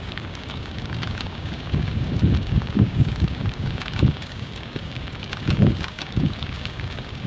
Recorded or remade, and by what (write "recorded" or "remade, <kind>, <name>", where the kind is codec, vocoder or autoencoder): remade, codec, DAC